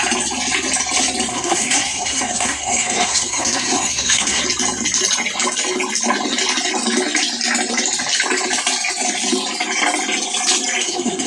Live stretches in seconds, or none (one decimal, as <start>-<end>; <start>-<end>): 0.0-1.3; 4.4-10.8

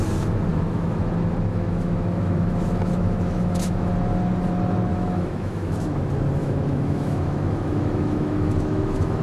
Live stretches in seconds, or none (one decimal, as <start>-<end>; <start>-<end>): 0.0-0.5; 1.1-1.5; 3.9-4.9; 6.0-6.4

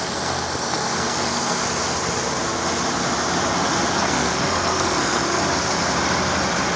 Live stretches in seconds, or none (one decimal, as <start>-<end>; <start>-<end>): 1.6-3.9; 5.4-6.8

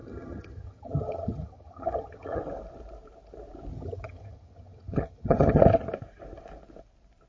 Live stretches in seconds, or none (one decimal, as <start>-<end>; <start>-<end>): 2.4-3.7; 5.6-7.3

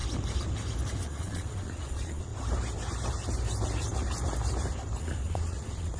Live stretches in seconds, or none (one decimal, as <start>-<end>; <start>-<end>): 0.0-1.0; 2.3-5.0

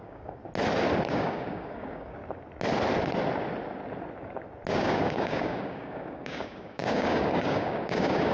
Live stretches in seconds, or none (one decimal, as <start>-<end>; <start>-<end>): 0.4-1.1; 2.2-4.7

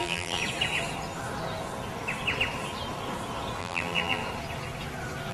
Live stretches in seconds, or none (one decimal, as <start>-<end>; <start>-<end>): 0.4-3.6; 4.2-5.3

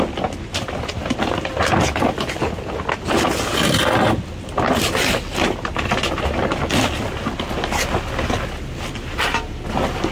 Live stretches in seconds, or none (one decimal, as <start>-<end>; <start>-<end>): 0.0-10.1